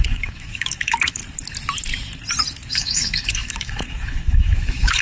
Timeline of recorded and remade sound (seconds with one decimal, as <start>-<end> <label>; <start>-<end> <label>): 0.0-1.2 remade; 1.2-2.7 recorded; 2.7-5.0 remade